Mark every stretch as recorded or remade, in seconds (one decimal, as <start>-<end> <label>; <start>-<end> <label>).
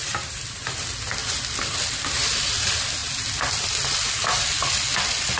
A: 0.0-3.0 remade; 3.0-5.4 recorded